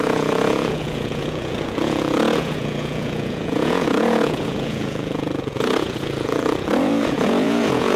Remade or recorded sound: remade